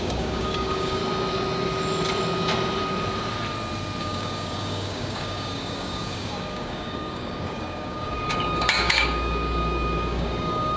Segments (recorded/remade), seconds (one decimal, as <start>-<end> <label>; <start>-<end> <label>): 0.0-1.0 remade; 1.0-4.0 recorded; 4.0-10.8 remade